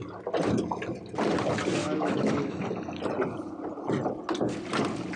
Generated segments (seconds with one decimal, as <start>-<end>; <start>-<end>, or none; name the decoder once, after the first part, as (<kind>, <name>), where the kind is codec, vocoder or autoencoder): 1.8-2.6 (autoencoder, DAC-VAE)